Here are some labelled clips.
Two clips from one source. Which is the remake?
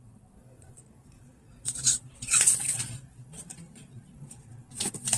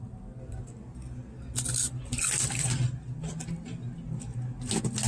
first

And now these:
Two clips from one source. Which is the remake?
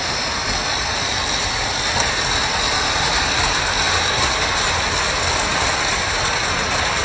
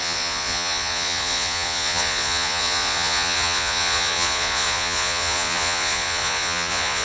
second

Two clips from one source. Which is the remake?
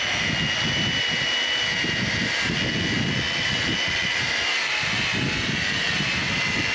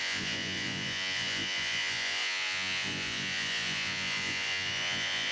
second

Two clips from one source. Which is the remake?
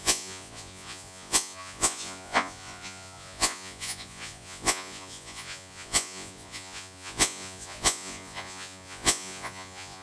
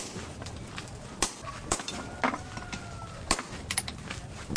first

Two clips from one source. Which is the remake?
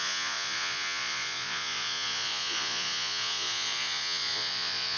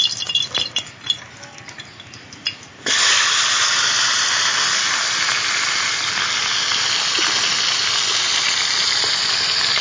first